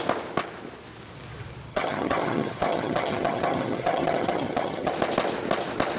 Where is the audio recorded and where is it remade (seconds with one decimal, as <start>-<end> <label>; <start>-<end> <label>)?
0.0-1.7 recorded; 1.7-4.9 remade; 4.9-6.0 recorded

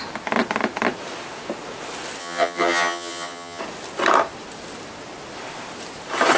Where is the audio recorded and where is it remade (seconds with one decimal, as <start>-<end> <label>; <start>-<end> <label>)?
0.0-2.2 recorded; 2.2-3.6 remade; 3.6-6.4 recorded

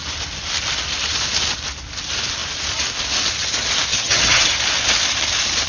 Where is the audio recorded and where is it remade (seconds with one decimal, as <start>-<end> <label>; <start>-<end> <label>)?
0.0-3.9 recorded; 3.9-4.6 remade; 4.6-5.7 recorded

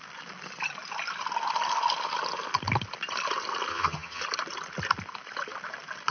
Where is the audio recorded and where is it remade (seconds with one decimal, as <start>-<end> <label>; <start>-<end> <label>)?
0.0-3.7 recorded; 3.7-4.2 remade; 4.2-6.1 recorded

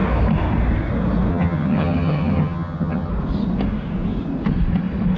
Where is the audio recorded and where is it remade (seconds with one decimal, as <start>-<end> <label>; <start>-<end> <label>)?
0.0-1.3 recorded; 1.3-3.1 remade; 3.1-5.2 recorded

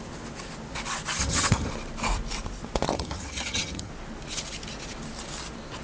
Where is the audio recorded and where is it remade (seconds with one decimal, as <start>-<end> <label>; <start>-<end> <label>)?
0.0-1.2 recorded; 1.2-1.7 remade; 1.7-2.9 recorded; 2.9-3.9 remade; 3.9-5.8 recorded

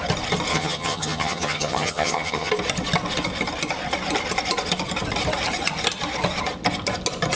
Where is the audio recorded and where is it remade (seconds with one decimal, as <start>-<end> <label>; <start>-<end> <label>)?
0.0-0.5 recorded; 0.5-2.5 remade; 2.5-7.4 recorded